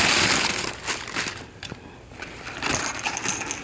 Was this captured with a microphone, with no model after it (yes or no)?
yes